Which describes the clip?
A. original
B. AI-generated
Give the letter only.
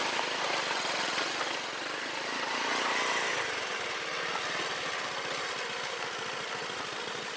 A